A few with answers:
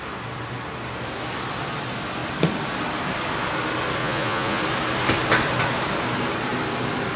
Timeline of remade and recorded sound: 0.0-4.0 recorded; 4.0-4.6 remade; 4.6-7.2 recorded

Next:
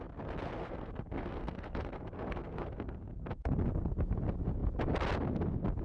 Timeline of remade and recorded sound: 0.0-0.6 recorded; 0.6-3.5 remade; 3.5-5.8 recorded

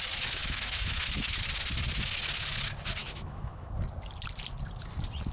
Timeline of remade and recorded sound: 0.0-0.4 recorded; 0.4-1.4 remade; 1.4-3.0 recorded; 3.0-3.7 remade; 3.7-5.3 recorded

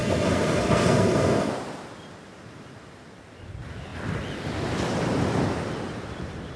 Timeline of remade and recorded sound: 0.0-1.5 remade; 1.5-6.6 recorded